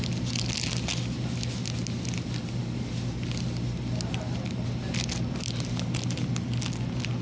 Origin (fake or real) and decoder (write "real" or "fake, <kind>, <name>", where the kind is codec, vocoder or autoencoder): real